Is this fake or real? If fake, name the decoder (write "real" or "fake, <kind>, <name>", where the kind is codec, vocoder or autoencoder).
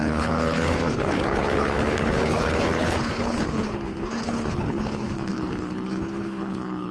fake, codec, HILCodec